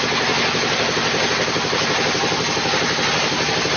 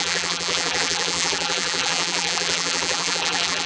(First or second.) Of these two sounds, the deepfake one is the second